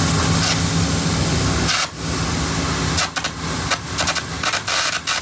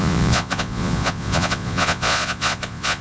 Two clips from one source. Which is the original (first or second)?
first